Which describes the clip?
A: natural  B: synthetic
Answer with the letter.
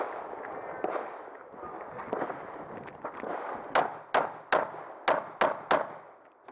A